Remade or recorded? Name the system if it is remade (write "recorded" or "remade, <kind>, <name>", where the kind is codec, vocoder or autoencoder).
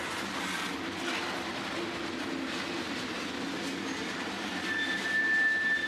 recorded